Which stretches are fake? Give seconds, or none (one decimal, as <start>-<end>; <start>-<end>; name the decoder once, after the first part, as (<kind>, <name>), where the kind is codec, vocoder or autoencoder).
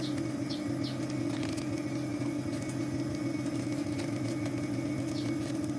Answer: none